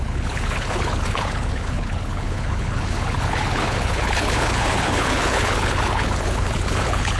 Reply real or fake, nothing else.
fake